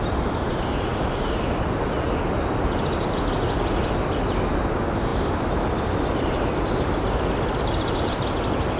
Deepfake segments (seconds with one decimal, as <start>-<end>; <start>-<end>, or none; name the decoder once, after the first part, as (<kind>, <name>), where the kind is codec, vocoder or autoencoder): none